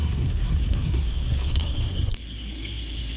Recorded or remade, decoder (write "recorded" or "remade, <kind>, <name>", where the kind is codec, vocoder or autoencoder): remade, codec, SNAC